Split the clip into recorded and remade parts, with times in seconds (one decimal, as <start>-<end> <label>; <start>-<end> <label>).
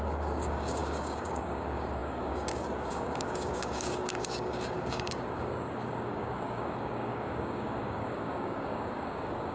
0.0-9.5 remade